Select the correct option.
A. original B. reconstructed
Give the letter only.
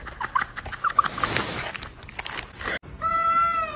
A